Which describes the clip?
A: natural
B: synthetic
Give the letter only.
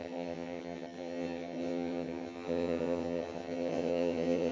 B